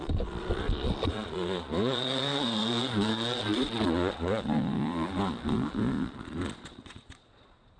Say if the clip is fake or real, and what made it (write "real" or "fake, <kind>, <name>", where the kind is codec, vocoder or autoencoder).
fake, vocoder, Vocos